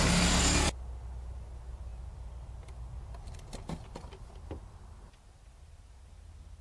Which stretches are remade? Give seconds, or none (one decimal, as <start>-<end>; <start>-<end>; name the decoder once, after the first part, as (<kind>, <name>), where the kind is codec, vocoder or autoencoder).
none